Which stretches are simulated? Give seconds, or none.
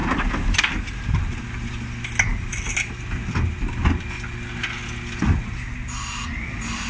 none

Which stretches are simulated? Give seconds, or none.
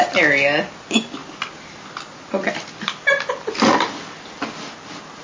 none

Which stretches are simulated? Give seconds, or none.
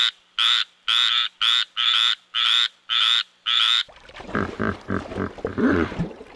3.8-4.9 (vocoder, BigVGAN v2); 5.5-6.4